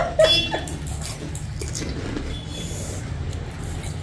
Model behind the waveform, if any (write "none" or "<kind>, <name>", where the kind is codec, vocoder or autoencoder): none